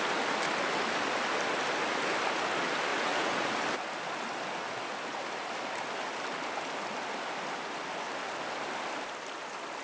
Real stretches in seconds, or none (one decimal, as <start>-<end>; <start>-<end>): 0.0-2.9; 3.6-9.8